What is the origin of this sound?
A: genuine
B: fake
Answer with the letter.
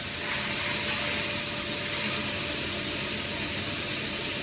A